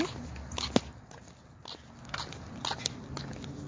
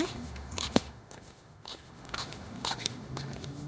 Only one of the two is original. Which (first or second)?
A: first